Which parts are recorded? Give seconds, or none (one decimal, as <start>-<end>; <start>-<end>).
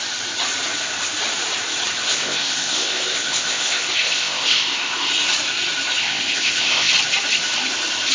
0.0-2.1; 5.1-6.0; 6.9-8.1